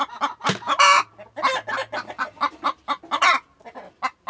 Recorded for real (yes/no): yes